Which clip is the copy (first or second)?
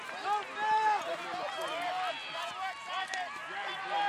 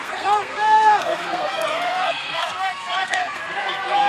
second